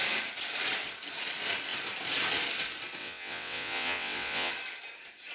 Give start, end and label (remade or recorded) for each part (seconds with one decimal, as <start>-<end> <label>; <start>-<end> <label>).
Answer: 0.0-3.0 recorded; 3.0-4.5 remade; 4.5-5.3 recorded